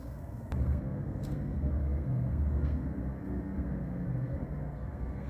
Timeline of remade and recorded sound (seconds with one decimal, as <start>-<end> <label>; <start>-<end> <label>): 0.0-5.3 remade